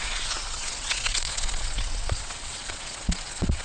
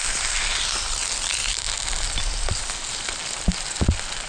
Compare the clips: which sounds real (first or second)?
second